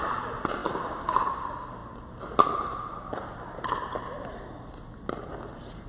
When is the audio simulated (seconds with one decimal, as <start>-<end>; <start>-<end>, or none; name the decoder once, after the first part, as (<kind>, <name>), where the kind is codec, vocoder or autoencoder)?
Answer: none